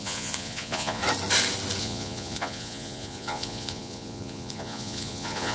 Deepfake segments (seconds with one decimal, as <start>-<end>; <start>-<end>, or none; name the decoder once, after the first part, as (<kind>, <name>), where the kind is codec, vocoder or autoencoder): 0.0-1.0 (vocoder, Vocos); 1.8-5.5